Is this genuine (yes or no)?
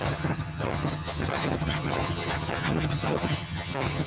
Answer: no